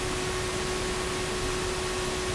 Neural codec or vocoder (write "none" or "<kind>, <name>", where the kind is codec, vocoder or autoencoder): none